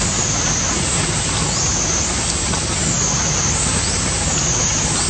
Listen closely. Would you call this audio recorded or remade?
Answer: recorded